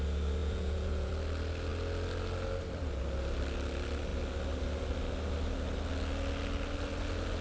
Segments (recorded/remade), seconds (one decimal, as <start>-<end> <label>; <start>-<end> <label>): 0.0-0.4 recorded; 0.4-1.1 remade; 1.1-7.4 recorded